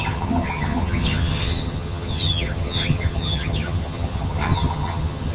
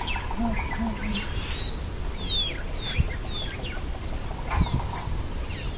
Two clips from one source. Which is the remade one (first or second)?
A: first